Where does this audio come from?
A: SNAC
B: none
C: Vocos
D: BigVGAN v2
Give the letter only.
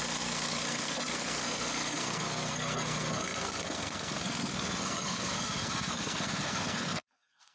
A